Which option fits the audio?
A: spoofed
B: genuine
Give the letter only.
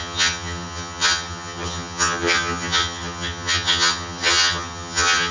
A